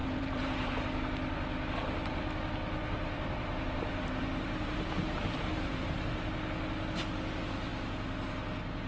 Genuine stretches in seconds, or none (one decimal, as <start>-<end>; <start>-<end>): 0.8-2.8; 6.0-8.9